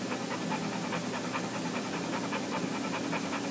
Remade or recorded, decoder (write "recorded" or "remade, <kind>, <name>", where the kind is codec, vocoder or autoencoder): recorded